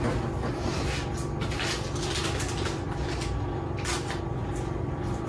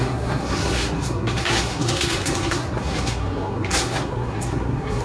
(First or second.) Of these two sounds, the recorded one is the first